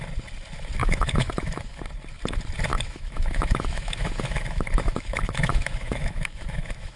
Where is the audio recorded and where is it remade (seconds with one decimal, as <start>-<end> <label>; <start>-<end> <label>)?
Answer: 0.0-0.8 recorded; 0.8-1.8 remade; 1.8-2.7 recorded; 2.7-7.0 remade